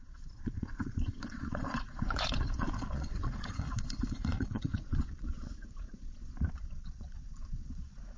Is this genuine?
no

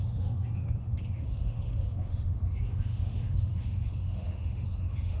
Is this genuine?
no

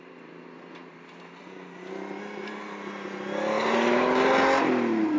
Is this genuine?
yes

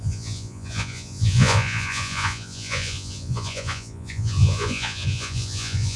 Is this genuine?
no